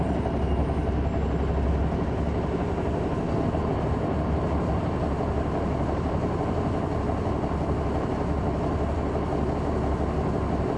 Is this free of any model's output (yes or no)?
yes